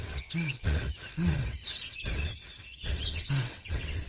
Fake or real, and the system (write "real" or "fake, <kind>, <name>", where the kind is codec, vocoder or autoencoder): fake, vocoder, WaveNeXt